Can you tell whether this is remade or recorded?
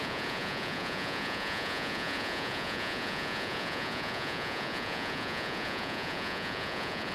remade